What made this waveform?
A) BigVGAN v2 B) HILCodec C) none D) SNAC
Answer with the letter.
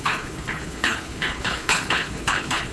B